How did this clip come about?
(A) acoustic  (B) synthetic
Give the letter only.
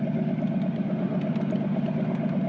A